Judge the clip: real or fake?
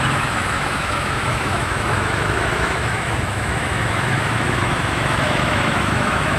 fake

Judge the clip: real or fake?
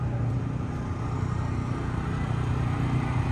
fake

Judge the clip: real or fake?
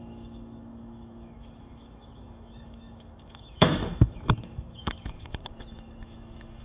fake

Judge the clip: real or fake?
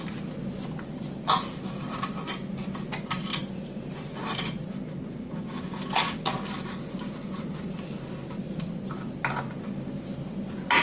real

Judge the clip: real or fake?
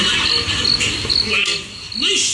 real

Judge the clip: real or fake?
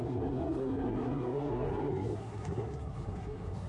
fake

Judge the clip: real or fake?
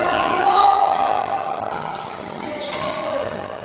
fake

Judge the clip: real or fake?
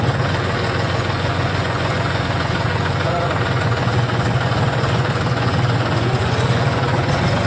fake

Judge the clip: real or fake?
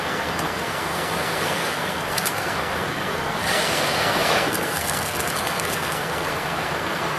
fake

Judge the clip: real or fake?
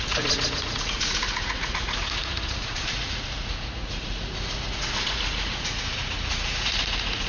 fake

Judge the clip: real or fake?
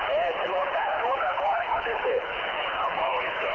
fake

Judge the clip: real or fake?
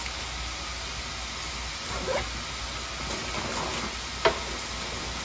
real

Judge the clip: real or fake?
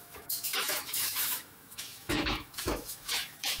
fake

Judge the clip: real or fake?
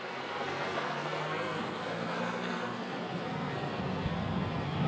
fake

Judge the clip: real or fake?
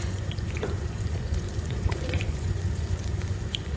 fake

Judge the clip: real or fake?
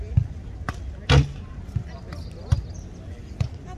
real